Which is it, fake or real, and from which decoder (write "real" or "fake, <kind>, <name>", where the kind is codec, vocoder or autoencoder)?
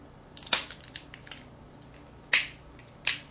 real